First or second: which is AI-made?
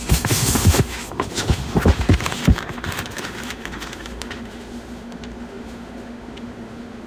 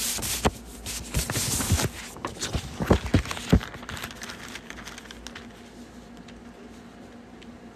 first